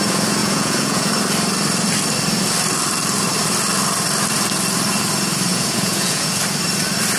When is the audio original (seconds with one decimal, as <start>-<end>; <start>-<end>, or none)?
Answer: 0.0-0.4; 1.1-5.5; 6.3-7.2